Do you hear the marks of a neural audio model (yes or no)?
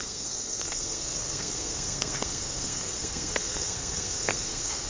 yes